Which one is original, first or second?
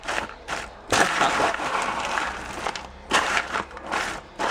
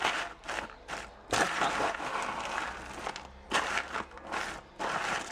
second